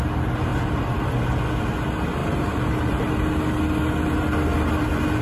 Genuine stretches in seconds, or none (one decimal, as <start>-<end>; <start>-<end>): 0.0-0.5; 1.2-2.2; 3.0-5.2